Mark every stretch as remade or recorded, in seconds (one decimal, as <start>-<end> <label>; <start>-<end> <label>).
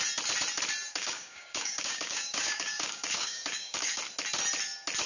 0.0-0.9 recorded; 0.9-4.0 remade; 4.0-5.1 recorded